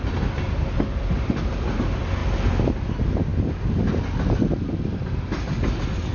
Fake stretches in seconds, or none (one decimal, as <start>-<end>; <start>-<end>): none